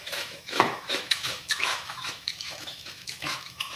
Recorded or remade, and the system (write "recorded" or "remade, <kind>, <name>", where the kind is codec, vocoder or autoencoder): remade, autoencoder, DAC-VAE